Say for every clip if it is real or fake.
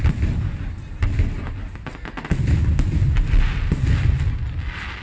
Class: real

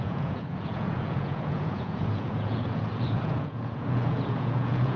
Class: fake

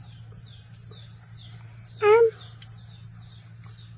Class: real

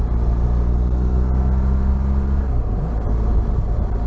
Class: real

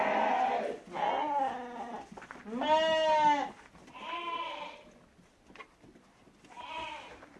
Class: real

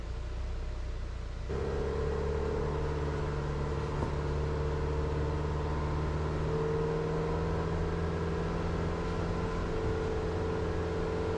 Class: real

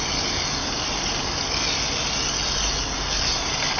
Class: real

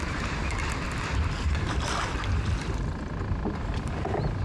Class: real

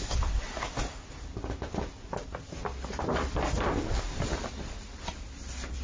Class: real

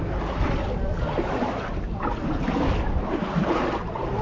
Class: real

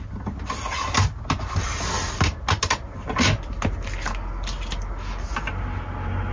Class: real